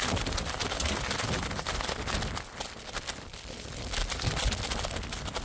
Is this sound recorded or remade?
recorded